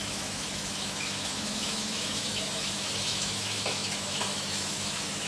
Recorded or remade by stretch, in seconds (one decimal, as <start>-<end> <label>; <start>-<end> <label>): 0.0-5.3 remade